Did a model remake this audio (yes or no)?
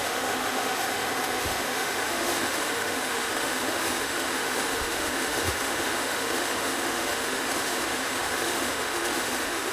yes